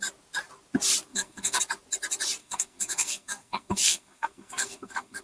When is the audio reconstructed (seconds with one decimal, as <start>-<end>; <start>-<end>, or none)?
1.1-1.6; 2.4-5.2